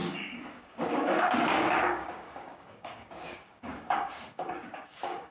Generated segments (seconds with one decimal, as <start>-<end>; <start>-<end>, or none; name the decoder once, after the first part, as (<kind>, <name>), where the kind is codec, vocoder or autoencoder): 0.0-5.3 (codec, DAC)